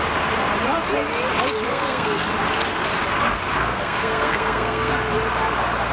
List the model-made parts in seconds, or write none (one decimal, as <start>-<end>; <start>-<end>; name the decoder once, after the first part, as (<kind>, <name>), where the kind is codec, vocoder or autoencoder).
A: 1.7-2.3 (codec, SNAC); 3.6-4.9